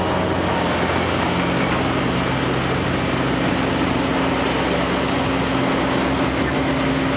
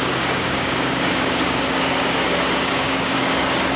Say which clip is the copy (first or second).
second